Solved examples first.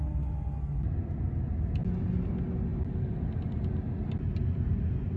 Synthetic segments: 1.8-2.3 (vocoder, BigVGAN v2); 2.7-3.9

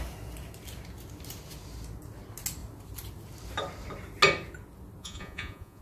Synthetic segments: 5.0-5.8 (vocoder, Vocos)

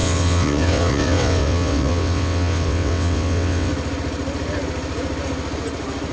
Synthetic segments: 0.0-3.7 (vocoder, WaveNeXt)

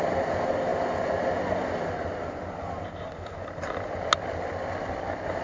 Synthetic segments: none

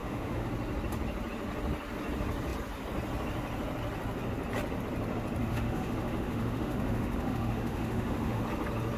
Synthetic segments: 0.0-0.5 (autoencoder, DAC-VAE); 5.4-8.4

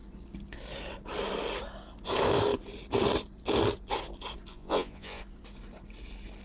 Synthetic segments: 4.5-5.2 (vocoder, Vocos)